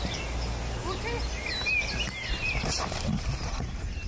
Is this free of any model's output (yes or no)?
yes